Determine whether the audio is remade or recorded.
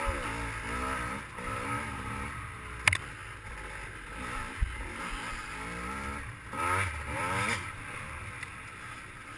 recorded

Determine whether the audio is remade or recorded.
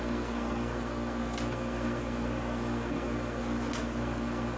remade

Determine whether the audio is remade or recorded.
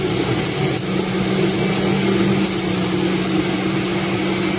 recorded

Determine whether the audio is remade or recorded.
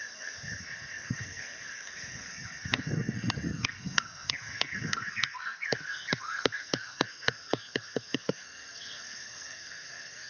remade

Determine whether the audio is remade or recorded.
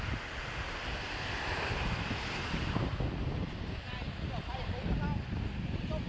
recorded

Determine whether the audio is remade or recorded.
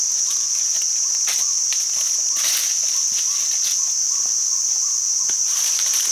recorded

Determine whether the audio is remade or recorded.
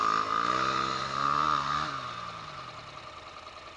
recorded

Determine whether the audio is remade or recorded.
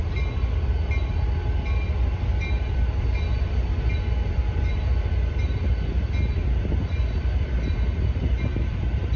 recorded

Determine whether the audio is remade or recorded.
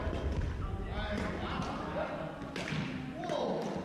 recorded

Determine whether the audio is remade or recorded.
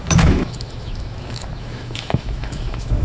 remade